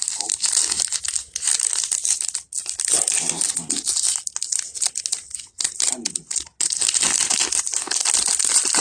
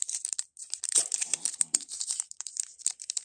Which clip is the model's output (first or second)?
second